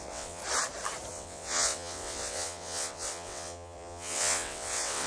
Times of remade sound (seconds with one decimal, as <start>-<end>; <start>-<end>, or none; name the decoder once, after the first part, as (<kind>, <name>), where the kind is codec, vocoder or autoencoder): 0.0-0.4 (vocoder, WaveNeXt); 1.1-5.1